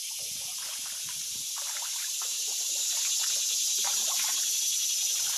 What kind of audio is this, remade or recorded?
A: recorded